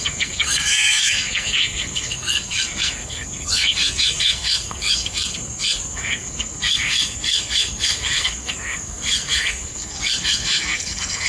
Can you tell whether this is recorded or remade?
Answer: remade